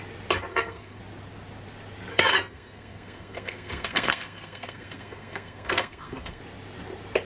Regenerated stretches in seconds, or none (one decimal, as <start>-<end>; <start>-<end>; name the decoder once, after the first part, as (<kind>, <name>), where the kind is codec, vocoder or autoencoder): 0.5-1.0 (codec, SNAC); 2.1-6.4